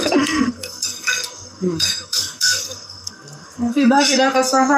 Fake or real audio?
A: fake